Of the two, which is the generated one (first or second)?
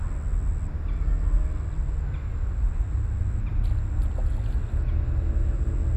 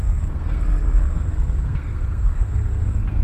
second